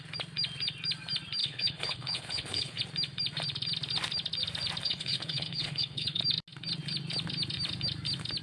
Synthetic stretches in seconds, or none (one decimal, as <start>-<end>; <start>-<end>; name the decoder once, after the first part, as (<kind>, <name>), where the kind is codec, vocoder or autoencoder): 1.4-2.8 (codec, HILCodec); 4.8-6.2